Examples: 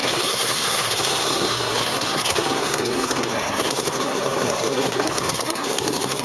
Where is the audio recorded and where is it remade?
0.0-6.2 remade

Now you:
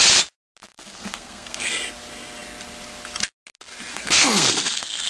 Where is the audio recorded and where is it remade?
0.0-0.7 recorded; 0.7-1.7 remade; 1.7-3.9 recorded; 3.9-5.1 remade

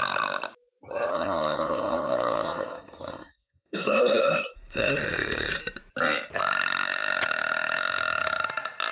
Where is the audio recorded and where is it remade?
0.0-1.1 recorded; 1.1-5.6 remade; 5.6-8.9 recorded